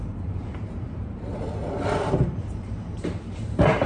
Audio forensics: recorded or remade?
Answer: remade